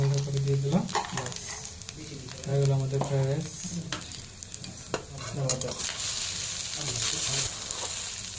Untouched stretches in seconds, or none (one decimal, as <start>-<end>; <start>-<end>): 0.0-8.4